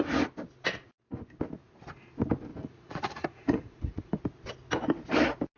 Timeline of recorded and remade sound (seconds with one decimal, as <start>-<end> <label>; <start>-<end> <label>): 0.0-2.5 recorded; 2.5-4.2 remade; 4.2-5.6 recorded